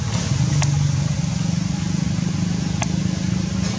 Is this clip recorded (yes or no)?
yes